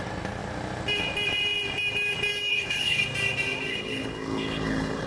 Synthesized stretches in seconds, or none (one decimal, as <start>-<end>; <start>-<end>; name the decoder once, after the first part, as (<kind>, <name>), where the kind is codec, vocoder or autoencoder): 2.5-3.0 (codec, HILCodec); 3.7-5.1